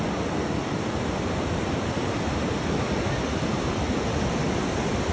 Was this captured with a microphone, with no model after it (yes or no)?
yes